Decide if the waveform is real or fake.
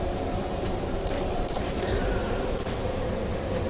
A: fake